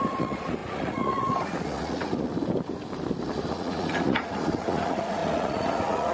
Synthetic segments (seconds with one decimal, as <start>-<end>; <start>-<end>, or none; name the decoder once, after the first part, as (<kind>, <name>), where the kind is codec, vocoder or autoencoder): 0.0-2.3 (vocoder, Vocos); 3.5-6.1